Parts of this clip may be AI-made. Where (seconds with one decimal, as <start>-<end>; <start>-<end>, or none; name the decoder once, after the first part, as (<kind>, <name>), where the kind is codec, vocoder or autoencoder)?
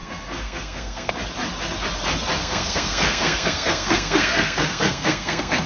0.0-1.1 (codec, SNAC); 2.4-5.7